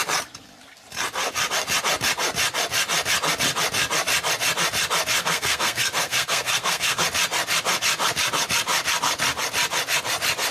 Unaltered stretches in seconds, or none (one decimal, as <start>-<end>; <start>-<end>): 0.0-5.2; 7.0-10.5